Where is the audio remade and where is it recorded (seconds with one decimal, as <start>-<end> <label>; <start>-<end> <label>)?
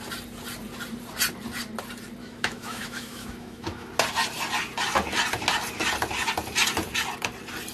0.0-2.2 recorded; 2.2-3.9 remade; 3.9-7.7 recorded